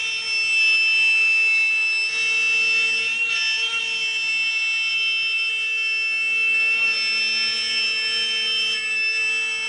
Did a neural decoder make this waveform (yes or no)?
no